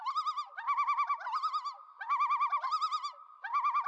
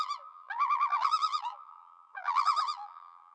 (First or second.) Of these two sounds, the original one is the first